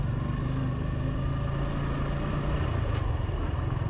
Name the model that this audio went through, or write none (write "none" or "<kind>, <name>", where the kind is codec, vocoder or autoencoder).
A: none